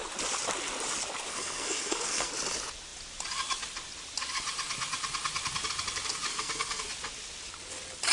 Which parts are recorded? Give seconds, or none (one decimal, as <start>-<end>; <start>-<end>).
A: 0.0-1.3; 2.3-6.3; 6.8-8.1